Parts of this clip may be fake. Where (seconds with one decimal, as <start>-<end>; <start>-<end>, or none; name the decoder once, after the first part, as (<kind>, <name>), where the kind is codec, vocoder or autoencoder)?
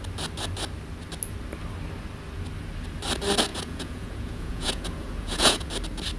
3.5-5.7 (vocoder, Vocos)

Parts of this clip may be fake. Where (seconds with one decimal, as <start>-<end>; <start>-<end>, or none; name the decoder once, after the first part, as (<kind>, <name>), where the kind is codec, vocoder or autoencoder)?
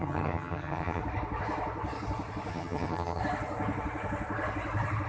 0.0-1.0 (vocoder, HiFi-GAN); 2.5-3.2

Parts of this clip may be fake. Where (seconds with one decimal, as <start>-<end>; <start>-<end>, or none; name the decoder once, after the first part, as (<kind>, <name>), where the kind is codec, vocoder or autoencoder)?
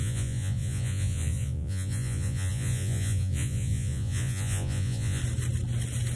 0.0-5.2 (vocoder, Vocos)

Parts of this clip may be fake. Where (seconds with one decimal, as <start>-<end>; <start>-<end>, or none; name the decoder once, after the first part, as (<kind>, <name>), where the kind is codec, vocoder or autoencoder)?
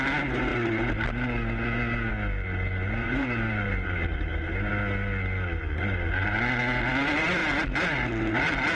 3.0-4.7 (vocoder, BigVGAN v2); 5.6-6.6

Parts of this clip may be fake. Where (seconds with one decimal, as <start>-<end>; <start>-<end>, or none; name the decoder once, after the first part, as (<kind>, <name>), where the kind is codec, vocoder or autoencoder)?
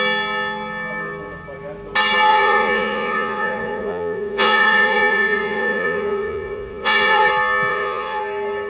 2.3-7.3 (vocoder, Vocos); 7.7-8.2